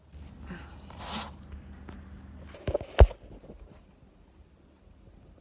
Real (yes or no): yes